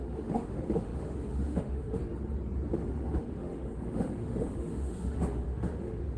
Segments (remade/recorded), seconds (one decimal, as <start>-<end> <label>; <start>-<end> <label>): 0.0-2.0 remade; 2.0-2.7 recorded; 2.7-6.2 remade